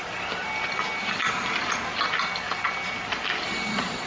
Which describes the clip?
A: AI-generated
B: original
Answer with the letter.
B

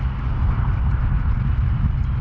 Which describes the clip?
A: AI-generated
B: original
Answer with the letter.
B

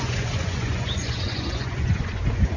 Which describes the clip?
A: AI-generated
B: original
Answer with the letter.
A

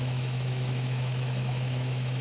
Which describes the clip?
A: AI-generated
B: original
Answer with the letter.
A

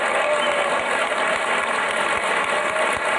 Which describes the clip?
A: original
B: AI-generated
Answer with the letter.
A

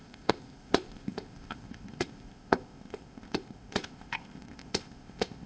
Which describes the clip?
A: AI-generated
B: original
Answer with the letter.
A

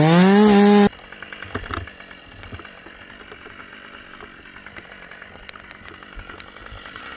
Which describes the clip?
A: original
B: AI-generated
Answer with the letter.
A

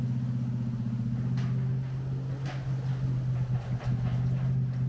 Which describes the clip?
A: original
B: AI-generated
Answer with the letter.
A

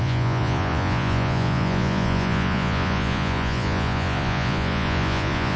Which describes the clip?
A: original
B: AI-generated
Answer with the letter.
B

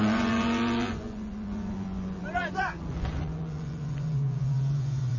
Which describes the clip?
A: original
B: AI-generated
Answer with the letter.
B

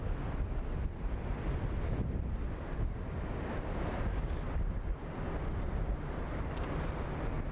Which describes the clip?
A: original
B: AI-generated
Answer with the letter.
A